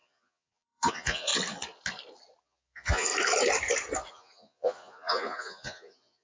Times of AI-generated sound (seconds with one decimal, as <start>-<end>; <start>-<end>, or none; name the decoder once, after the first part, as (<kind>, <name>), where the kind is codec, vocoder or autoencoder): 0.0-1.3 (vocoder, Vocos); 2.4-3.1; 4.1-6.2